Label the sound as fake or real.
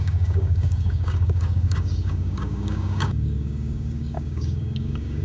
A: fake